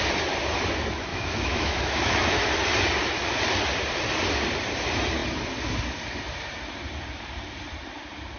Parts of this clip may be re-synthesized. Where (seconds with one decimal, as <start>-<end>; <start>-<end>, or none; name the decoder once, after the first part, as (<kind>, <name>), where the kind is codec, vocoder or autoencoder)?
1.1-2.4 (autoencoder, DAC-VAE)